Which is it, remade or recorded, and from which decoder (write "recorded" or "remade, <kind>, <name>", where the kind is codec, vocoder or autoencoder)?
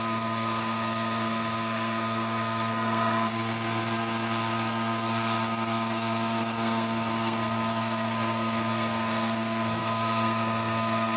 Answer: remade, codec, SNAC